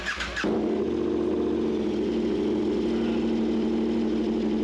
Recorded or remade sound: recorded